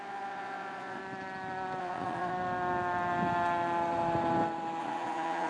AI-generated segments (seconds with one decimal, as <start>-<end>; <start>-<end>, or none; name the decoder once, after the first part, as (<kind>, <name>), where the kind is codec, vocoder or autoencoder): 0.0-1.0 (vocoder, Vocos); 1.8-2.3; 4.8-5.5